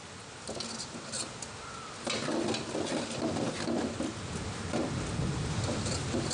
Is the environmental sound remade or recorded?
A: recorded